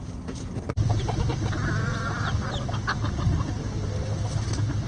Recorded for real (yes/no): yes